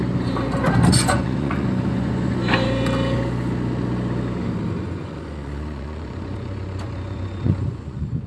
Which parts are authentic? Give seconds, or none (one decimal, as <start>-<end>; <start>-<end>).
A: 0.0-0.9; 2.4-4.8